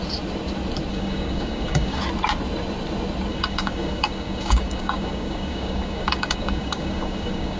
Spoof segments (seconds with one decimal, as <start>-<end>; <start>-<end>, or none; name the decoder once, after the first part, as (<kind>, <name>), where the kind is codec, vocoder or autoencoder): 0.9-2.0 (codec, DAC); 3.3-7.6